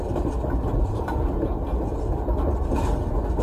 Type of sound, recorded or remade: recorded